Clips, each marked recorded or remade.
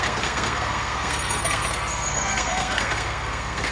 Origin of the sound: remade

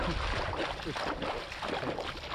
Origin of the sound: recorded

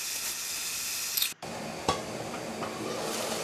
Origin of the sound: recorded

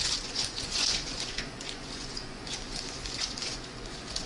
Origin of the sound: remade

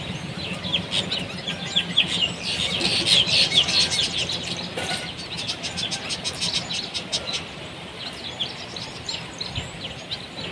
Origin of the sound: recorded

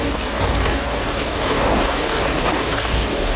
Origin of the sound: remade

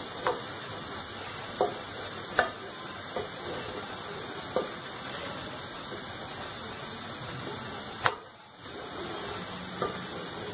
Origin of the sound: recorded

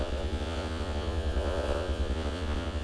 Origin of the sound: remade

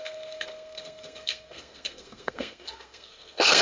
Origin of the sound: remade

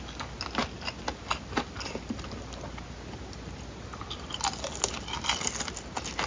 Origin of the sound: recorded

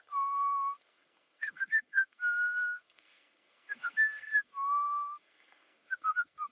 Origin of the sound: remade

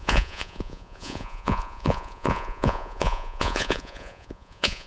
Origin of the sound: remade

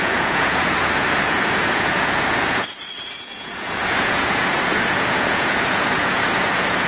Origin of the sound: remade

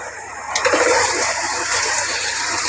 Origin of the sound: remade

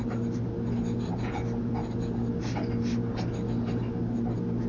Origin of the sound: recorded